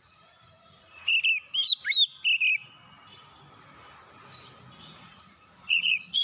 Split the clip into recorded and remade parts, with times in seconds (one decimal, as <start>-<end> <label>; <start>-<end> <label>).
0.0-1.1 remade; 1.1-4.8 recorded; 4.8-6.2 remade